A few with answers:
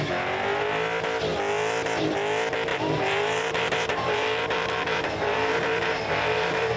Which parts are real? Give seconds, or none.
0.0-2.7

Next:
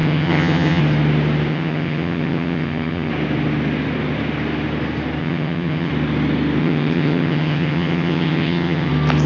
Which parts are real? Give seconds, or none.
0.8-1.5; 3.1-5.2; 5.9-6.6; 8.9-9.3

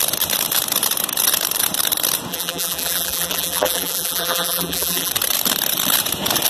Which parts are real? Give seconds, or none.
0.0-2.3; 5.1-6.5

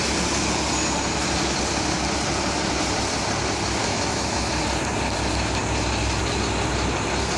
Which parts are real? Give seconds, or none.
0.0-3.8; 4.5-7.4

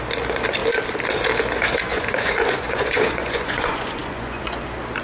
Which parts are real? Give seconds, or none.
0.0-1.9; 4.6-5.0

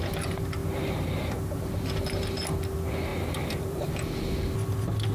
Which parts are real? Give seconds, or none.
0.0-0.6; 1.7-3.1; 3.9-5.1

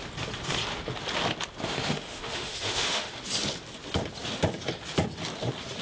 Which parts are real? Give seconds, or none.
0.0-1.6; 3.2-5.8